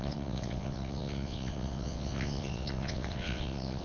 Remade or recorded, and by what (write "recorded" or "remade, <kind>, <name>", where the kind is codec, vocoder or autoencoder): remade, vocoder, WaveNeXt